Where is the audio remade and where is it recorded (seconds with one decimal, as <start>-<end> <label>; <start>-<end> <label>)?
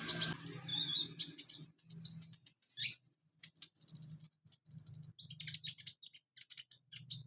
0.0-7.3 recorded